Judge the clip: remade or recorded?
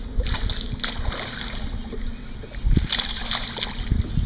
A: recorded